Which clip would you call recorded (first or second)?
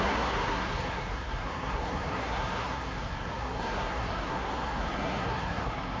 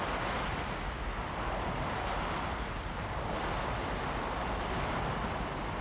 second